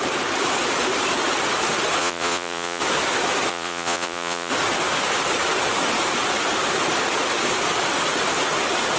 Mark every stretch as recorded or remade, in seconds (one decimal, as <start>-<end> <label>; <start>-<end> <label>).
0.0-2.0 recorded; 2.0-2.8 remade; 2.8-3.5 recorded; 3.5-4.5 remade; 4.5-9.0 recorded